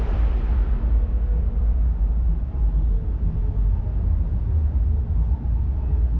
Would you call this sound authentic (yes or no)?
yes